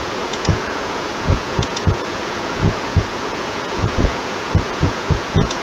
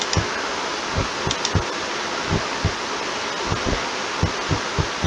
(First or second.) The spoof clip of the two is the first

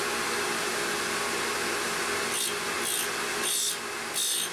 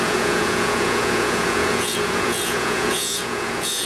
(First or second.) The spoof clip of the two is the second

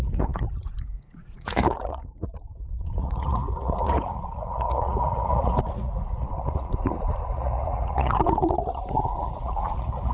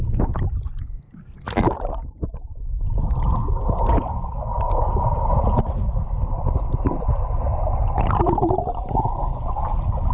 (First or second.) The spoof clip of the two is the first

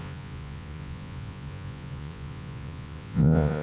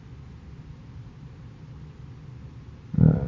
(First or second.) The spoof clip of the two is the first